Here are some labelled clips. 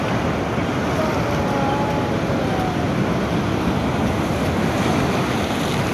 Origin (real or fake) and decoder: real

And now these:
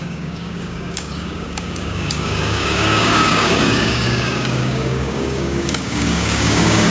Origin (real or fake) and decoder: fake, codec, DAC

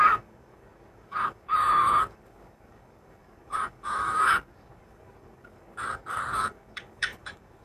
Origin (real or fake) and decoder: fake, codec, DAC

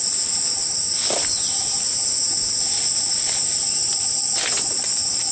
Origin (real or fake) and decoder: real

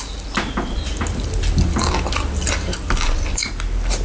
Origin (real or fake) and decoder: real